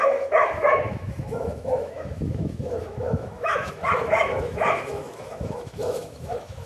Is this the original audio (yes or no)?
no